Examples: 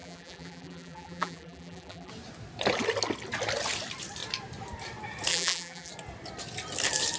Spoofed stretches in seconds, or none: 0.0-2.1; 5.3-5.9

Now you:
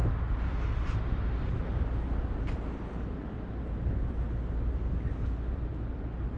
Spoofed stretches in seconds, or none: none

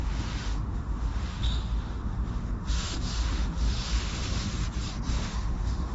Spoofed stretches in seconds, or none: 0.0-4.6; 5.1-5.9

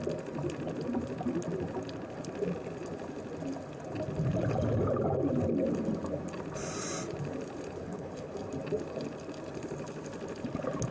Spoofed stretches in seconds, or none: 7.8-8.3

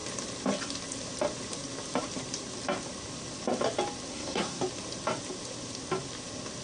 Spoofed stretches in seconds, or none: 4.1-4.6

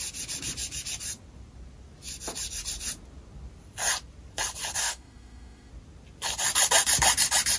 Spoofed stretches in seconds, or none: 4.8-5.7